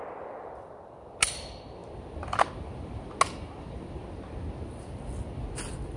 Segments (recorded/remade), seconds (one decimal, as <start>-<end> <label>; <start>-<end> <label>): 0.0-6.0 recorded